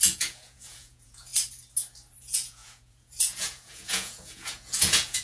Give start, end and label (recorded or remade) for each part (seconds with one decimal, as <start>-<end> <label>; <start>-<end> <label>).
0.0-1.3 remade; 1.3-2.2 recorded; 2.2-5.2 remade

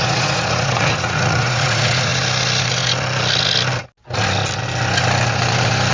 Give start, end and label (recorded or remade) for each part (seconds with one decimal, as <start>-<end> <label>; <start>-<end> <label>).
0.0-2.1 remade; 2.1-5.9 recorded